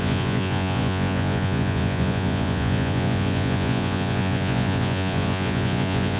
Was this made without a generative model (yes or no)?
no